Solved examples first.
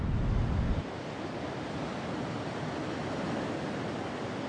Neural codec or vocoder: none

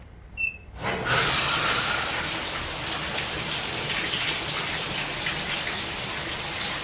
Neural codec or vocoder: none